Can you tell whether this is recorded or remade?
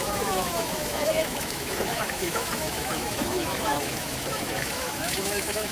remade